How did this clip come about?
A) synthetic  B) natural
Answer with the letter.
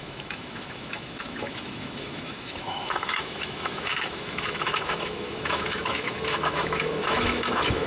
A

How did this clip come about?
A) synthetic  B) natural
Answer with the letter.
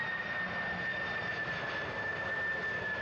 B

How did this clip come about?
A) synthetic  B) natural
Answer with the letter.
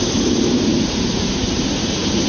A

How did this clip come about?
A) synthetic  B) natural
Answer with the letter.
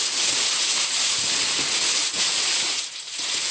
A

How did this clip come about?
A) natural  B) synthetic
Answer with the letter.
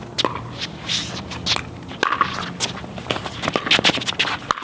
A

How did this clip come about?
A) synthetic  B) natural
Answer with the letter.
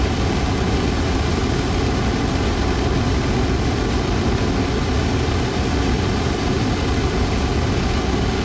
B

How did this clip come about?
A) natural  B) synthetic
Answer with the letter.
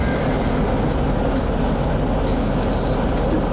A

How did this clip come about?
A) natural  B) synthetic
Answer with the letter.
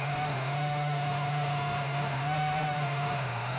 B